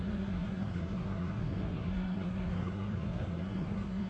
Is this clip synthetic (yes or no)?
yes